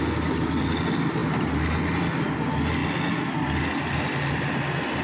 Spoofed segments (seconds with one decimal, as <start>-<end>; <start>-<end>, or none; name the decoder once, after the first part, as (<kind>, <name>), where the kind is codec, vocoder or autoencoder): none